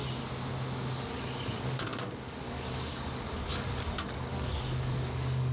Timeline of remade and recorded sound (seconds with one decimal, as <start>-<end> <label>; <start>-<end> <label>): 0.0-1.1 recorded; 1.1-5.5 remade